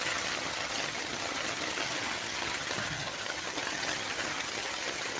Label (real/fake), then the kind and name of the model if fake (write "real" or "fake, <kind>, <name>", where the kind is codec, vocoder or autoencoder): fake, vocoder, HiFi-GAN